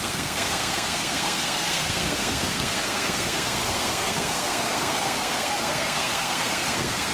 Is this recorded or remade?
remade